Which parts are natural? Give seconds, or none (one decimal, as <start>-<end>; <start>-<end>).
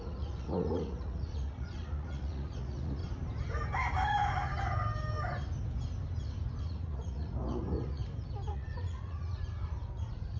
3.0-6.6; 8.0-8.5